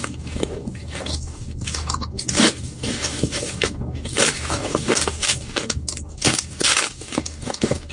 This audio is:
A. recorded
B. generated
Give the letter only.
B